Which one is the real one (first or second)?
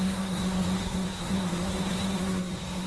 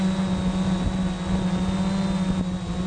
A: second